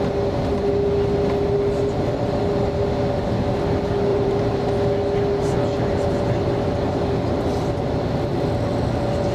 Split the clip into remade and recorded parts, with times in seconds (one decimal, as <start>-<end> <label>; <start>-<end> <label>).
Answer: 0.0-4.1 recorded; 4.1-4.7 remade; 4.7-9.3 recorded